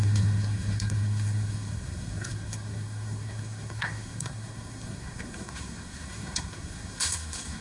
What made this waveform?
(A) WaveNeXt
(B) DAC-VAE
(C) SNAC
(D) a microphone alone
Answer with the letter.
C